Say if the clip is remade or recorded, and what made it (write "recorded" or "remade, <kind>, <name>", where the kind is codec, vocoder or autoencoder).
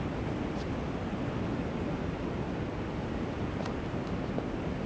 recorded